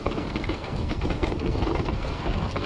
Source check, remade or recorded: remade